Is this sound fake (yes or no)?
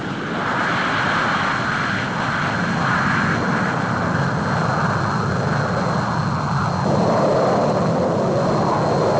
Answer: no